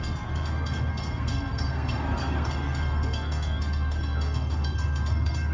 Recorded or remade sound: remade